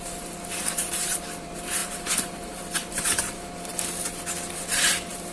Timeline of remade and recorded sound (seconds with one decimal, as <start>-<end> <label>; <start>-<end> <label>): 0.0-3.7 remade; 3.7-4.6 recorded; 4.6-5.3 remade